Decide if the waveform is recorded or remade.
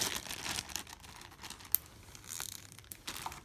recorded